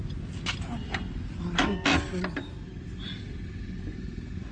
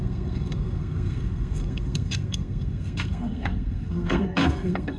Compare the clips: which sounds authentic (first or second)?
first